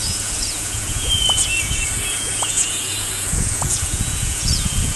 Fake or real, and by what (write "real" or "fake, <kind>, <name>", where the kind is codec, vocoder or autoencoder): fake, vocoder, Vocos